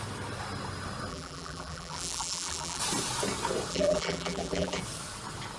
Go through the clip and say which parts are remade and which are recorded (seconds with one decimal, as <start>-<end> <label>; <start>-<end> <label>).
0.0-1.1 recorded; 1.1-2.8 remade; 2.8-3.7 recorded; 3.7-4.8 remade; 4.8-5.6 recorded